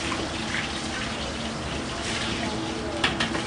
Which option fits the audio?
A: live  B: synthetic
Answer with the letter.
B